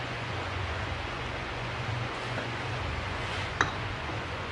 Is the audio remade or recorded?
remade